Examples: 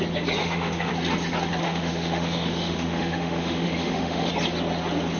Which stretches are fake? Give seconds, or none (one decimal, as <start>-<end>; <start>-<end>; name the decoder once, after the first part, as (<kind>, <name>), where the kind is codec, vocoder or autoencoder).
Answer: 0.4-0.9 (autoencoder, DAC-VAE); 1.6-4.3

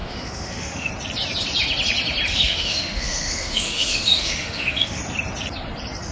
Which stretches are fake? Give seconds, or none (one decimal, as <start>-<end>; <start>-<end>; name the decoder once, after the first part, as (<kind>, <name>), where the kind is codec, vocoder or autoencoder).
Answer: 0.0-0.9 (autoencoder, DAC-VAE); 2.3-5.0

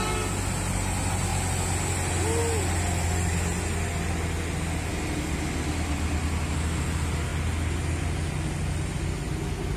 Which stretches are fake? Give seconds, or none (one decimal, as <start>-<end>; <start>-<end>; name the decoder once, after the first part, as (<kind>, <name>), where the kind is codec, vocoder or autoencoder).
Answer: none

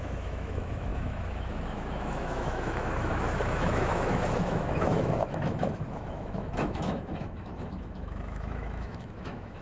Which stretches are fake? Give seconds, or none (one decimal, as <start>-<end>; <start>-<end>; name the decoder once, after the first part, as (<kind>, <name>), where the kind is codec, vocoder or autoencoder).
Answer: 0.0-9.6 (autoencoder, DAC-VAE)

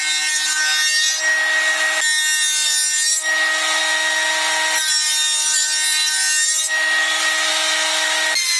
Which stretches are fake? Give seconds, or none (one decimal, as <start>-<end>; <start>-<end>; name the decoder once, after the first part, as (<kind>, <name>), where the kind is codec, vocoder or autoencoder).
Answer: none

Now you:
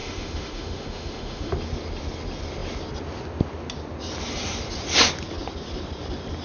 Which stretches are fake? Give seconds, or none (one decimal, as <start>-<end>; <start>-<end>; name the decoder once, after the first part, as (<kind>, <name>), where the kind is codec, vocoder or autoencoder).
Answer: 0.0-1.5 (autoencoder, DAC-VAE)

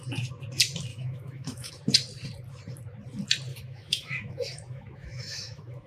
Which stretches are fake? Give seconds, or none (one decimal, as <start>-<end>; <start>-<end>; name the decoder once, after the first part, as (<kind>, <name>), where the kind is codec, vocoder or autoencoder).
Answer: 0.9-1.7 (autoencoder, DAC-VAE); 3.5-5.9

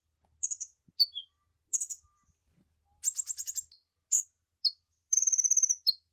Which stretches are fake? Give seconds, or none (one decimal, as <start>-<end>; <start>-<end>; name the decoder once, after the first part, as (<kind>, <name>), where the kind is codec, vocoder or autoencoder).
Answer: none